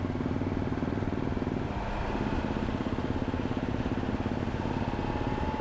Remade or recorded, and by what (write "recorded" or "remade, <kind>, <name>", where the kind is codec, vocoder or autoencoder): recorded